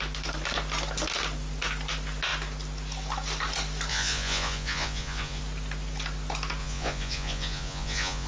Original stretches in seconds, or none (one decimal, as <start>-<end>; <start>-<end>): 0.0-3.9; 5.4-6.6